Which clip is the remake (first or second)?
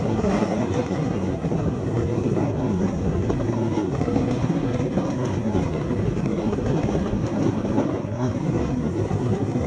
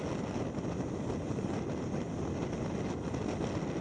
first